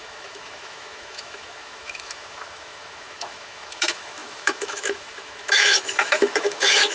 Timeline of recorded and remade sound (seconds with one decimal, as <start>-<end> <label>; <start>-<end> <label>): 0.0-6.9 remade